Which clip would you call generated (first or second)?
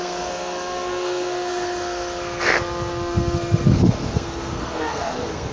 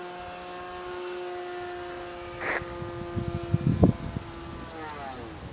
first